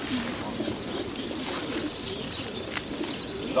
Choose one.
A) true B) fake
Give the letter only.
B